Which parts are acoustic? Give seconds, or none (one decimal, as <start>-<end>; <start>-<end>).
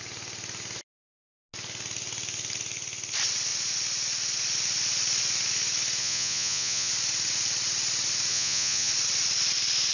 0.0-6.0; 6.9-8.3; 8.9-9.9